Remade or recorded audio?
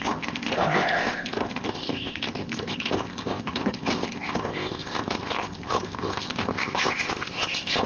remade